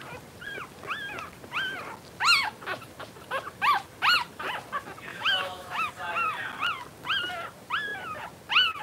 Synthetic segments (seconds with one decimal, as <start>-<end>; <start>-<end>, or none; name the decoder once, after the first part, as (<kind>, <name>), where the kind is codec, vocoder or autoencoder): 5.1-5.9 (autoencoder, DAC-VAE)